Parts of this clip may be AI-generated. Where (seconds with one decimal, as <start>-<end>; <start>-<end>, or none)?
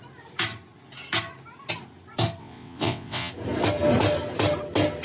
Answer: 2.4-3.3